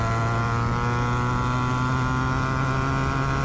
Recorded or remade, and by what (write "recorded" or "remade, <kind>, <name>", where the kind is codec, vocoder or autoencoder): recorded